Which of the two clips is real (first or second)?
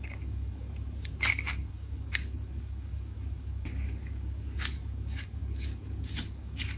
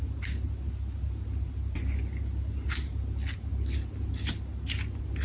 second